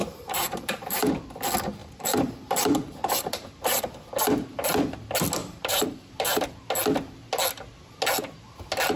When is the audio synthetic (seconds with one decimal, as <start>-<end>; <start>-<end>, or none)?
0.0-1.1; 1.8-3.9; 5.4-6.5

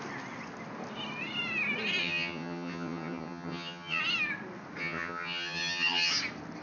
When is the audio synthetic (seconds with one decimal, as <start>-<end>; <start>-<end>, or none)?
2.0-4.0; 4.8-6.1

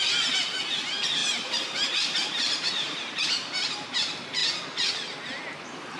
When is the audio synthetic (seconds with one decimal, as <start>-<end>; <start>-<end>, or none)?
1.2-4.0

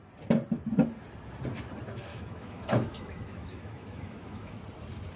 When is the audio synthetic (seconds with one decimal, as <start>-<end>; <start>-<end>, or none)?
2.1-4.6

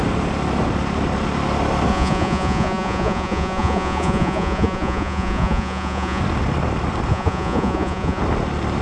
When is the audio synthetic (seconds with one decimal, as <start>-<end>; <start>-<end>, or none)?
1.9-6.2; 7.1-8.2